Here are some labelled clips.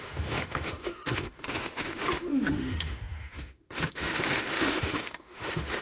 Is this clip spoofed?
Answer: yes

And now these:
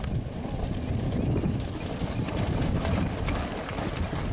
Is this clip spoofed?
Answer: no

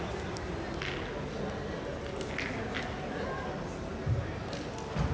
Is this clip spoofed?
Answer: no